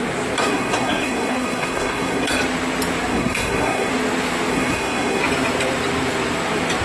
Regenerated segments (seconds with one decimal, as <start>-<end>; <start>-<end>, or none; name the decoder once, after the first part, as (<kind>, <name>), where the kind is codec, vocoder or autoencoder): 0.4-2.3 (codec, SNAC); 3.1-3.9; 4.5-5.2